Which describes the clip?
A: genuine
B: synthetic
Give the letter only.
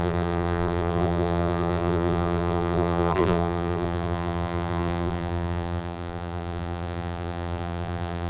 B